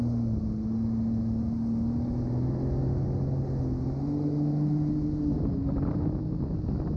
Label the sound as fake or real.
real